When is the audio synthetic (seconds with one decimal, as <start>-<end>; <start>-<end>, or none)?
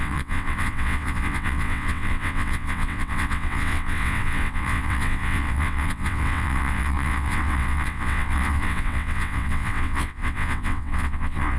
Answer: 0.0-11.6